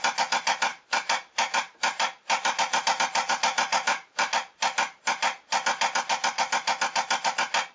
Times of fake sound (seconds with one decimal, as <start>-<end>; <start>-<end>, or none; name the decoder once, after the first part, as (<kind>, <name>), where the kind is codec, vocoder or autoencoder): 0.7-4.3 (vocoder, BigVGAN v2)